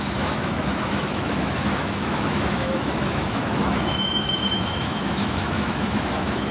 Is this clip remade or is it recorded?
remade